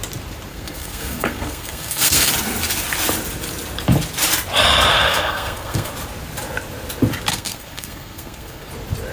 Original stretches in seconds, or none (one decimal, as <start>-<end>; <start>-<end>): 0.0-0.5; 2.3-4.9; 5.9-7.3; 8.7-9.1